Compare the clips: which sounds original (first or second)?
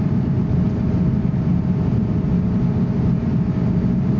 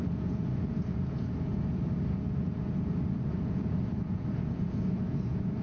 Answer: first